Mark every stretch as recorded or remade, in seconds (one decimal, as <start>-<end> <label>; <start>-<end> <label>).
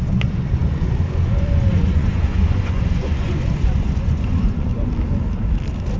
0.0-4.7 remade; 4.7-6.0 recorded